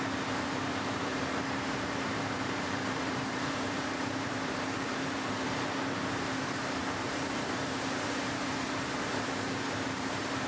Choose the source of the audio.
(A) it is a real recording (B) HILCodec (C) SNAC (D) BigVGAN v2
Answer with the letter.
D